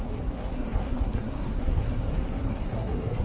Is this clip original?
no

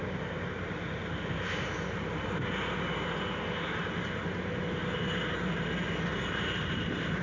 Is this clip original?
yes